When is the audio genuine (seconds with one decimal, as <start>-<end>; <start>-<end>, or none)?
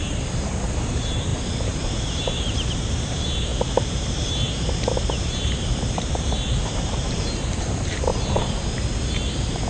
8.1-9.1